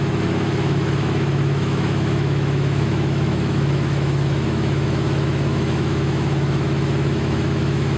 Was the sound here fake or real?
fake